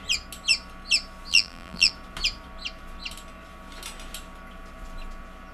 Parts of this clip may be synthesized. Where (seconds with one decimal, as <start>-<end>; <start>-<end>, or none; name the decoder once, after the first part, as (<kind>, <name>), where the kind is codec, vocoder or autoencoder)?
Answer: 1.3-1.9 (vocoder, BigVGAN v2)